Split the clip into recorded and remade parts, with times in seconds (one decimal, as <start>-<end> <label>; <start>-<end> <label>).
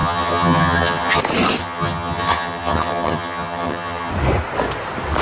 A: 0.0-1.2 remade; 1.2-1.6 recorded; 1.6-4.1 remade; 4.1-5.2 recorded